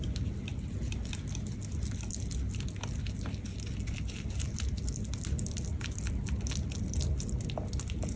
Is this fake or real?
real